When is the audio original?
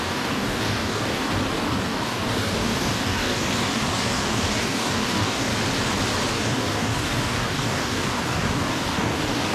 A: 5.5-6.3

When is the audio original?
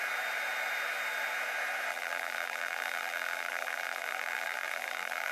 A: 0.0-1.9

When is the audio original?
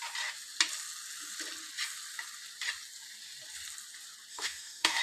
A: 0.0-4.3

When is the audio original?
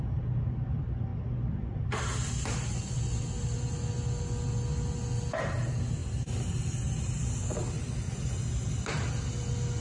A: 0.0-9.8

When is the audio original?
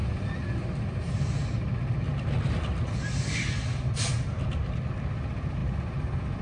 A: 0.0-6.4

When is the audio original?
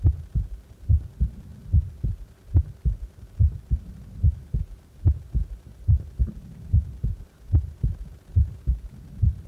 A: 0.0-9.5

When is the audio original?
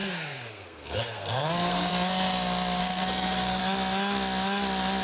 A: 1.9-2.8; 3.6-5.0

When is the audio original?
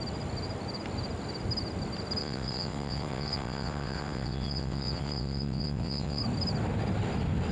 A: 0.0-2.2; 6.2-7.5